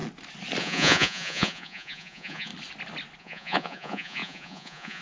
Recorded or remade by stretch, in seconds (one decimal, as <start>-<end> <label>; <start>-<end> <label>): 0.0-0.6 recorded; 0.6-2.5 remade; 2.5-3.2 recorded; 3.2-5.0 remade